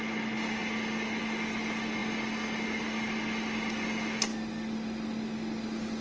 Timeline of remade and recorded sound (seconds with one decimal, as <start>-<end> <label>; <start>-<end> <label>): 0.0-6.0 recorded